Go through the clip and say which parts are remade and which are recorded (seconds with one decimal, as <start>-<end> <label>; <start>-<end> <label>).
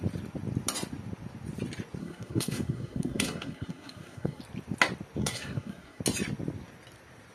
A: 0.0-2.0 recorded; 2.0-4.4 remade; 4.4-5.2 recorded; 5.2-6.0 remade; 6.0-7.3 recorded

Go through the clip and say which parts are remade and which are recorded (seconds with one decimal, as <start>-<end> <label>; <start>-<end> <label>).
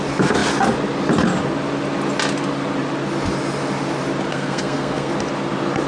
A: 0.0-4.3 recorded; 4.3-5.1 remade; 5.1-5.9 recorded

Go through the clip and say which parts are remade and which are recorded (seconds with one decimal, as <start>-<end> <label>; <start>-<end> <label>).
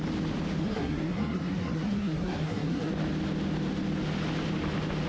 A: 0.0-0.6 recorded; 0.6-2.9 remade; 2.9-5.1 recorded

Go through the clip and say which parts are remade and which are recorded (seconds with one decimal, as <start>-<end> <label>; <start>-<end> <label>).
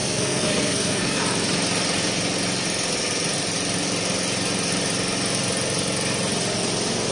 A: 0.0-1.2 remade; 1.2-7.1 recorded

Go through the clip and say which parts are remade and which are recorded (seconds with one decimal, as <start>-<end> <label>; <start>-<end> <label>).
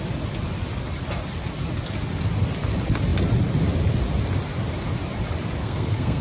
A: 0.0-5.6 recorded; 5.6-6.2 remade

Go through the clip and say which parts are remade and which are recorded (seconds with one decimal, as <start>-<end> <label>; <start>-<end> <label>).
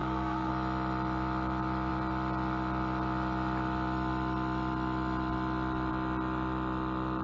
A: 0.0-0.5 remade; 0.5-7.2 recorded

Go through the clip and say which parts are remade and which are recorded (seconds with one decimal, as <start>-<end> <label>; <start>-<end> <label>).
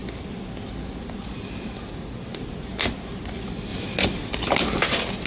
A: 0.0-5.3 recorded